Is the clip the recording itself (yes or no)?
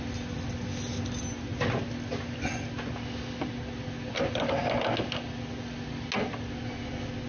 yes